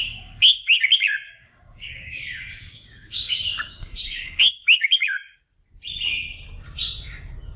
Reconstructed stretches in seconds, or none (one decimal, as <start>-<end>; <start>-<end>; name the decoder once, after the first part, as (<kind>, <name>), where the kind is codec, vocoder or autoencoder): 0.0-0.8 (codec, DAC); 1.3-5.4